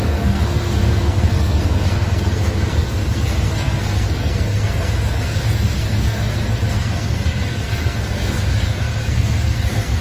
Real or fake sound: fake